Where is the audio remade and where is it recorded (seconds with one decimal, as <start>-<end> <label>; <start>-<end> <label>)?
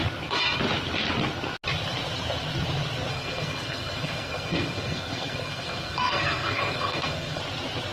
0.0-3.1 recorded; 3.1-7.4 remade; 7.4-7.9 recorded